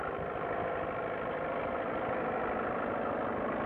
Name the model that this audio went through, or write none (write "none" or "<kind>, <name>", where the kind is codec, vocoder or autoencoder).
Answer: none